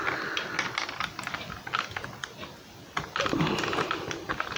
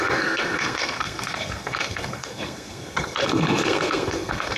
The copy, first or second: second